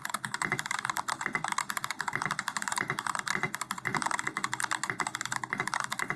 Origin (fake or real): real